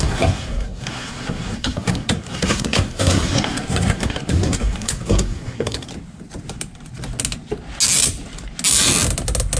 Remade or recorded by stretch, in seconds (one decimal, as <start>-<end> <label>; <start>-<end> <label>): 0.0-5.9 remade; 5.9-9.6 recorded